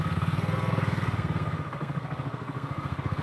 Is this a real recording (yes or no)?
no